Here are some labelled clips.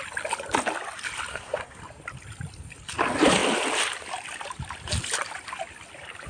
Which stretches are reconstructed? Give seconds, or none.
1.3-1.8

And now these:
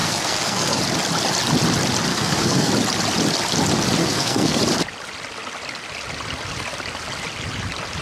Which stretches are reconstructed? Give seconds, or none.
0.0-0.8; 2.1-2.7; 4.0-4.6

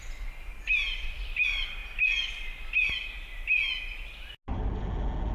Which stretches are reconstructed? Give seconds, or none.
none

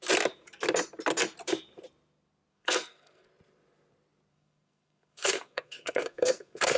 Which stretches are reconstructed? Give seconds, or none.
2.5-3.3; 4.3-6.8

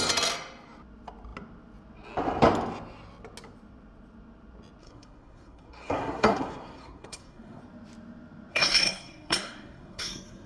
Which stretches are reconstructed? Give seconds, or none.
4.8-7.6; 8.5-10.5

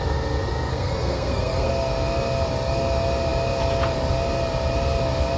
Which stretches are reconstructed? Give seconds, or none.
0.7-1.7

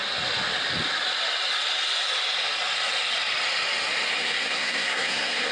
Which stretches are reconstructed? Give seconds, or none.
4.1-5.5